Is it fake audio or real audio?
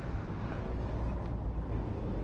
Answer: real